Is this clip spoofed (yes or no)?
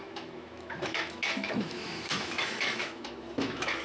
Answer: yes